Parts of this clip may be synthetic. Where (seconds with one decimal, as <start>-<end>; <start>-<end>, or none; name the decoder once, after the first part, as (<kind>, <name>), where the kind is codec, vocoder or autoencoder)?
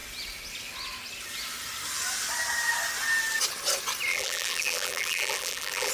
4.1-5.9 (vocoder, BigVGAN v2)